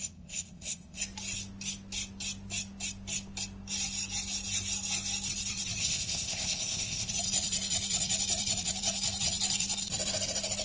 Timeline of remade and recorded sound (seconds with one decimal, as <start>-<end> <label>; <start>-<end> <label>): 0.0-1.0 remade; 1.0-5.8 recorded; 5.8-7.1 remade; 7.1-10.6 recorded

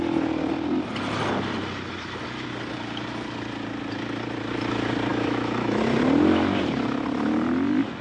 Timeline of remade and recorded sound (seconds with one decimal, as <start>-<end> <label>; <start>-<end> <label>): 0.0-5.1 recorded; 5.1-5.8 remade; 5.8-8.0 recorded

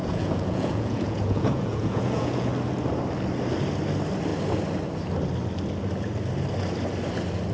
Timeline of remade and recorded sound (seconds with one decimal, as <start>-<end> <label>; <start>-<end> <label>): 0.0-2.5 remade; 2.5-7.5 recorded

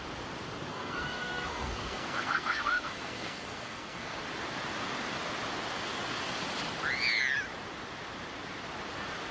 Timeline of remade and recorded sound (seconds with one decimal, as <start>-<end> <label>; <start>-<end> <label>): 0.0-0.7 recorded; 0.7-4.2 remade; 4.2-9.3 recorded

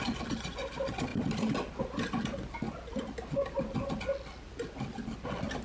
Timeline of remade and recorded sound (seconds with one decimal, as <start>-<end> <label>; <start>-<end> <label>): 0.0-5.6 recorded

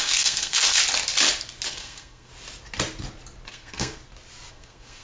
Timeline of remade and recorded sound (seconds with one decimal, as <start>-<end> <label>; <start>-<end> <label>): 0.0-0.8 remade; 0.8-1.7 recorded; 1.7-2.3 remade; 2.3-3.5 recorded; 3.5-4.0 remade; 4.0-4.5 recorded; 4.5-5.0 remade